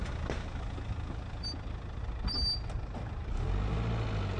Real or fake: real